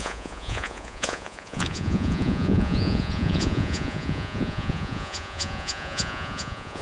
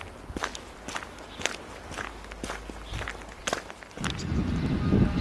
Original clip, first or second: second